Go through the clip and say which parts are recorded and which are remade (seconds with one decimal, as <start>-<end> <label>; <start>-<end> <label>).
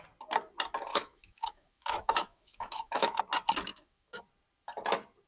0.0-0.9 recorded; 0.9-3.2 remade; 3.2-3.7 recorded; 3.7-4.2 remade; 4.2-5.3 recorded